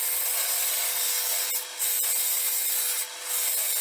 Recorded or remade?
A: recorded